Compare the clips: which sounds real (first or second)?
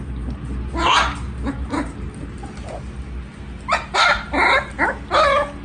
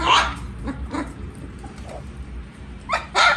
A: first